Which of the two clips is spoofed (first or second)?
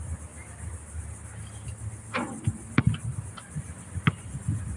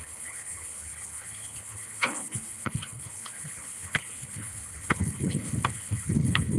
second